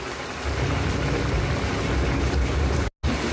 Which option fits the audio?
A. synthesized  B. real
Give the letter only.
B